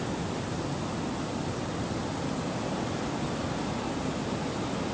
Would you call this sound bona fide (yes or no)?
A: yes